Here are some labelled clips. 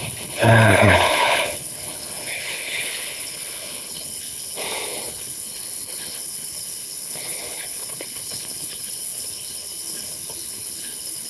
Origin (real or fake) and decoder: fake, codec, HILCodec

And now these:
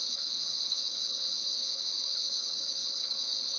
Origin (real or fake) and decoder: fake, codec, HILCodec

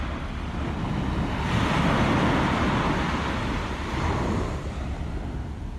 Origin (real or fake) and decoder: real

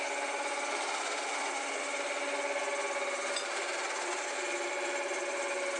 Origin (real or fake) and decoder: real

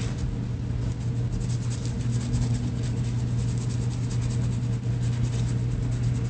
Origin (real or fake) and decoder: real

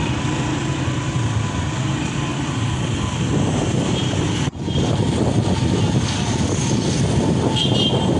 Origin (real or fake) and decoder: real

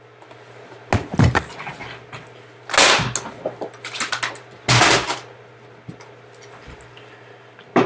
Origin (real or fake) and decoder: real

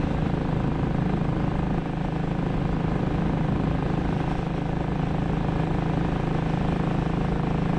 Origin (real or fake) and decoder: real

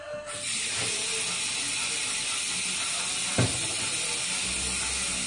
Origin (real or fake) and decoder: real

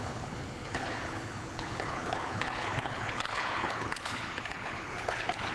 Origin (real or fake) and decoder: fake, codec, HILCodec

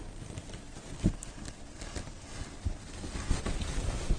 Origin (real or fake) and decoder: real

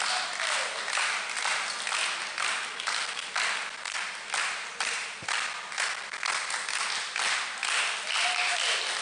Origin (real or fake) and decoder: real